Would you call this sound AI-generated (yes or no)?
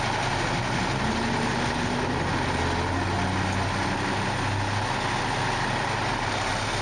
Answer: no